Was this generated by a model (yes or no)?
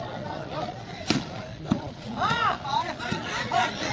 yes